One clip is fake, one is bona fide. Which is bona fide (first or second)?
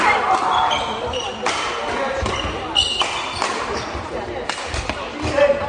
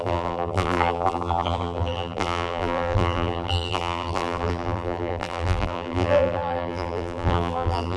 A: first